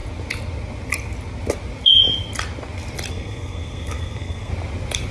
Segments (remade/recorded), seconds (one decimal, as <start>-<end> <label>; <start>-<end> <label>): 0.0-3.1 recorded; 3.1-4.5 remade; 4.5-5.1 recorded